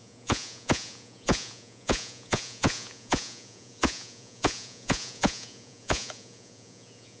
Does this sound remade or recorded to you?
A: remade